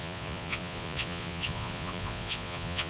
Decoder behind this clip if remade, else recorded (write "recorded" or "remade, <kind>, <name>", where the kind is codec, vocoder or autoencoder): remade, vocoder, Vocos